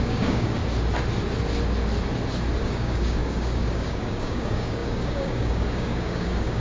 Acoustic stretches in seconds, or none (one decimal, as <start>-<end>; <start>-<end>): 0.6-2.6